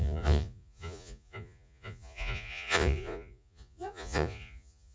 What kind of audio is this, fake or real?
fake